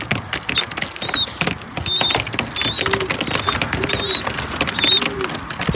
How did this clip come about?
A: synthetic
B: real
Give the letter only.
B